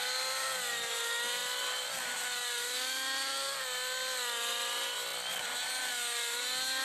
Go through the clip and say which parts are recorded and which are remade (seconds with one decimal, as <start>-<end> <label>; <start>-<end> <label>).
0.0-1.4 recorded; 1.4-2.2 remade; 2.2-6.8 recorded